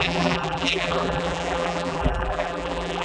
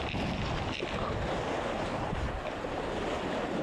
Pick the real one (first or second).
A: second